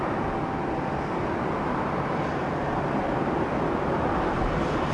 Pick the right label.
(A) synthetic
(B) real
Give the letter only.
B